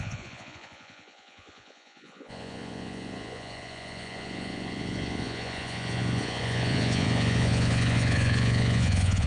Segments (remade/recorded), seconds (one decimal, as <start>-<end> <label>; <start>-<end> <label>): 0.0-9.3 remade